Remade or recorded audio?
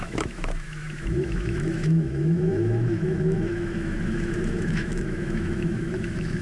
remade